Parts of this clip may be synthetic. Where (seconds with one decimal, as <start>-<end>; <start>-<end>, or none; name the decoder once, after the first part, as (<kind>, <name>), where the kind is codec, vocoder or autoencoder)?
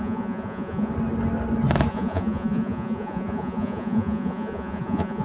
0.0-0.9 (vocoder, Vocos); 1.9-5.2